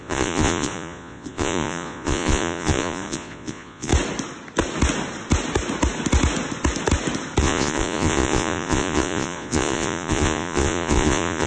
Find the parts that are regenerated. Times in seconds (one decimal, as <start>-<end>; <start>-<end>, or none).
0.0-3.9; 7.4-11.5

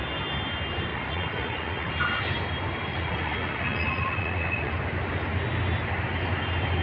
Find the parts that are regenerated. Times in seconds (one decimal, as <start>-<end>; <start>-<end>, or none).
0.9-1.9; 2.9-4.7